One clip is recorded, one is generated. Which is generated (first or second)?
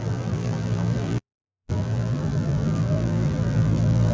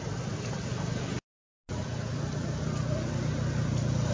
first